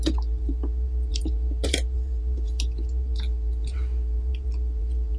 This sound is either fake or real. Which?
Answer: fake